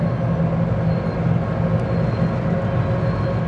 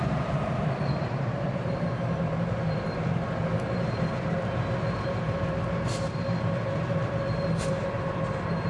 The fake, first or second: second